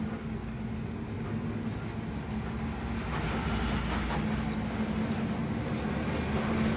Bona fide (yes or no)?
yes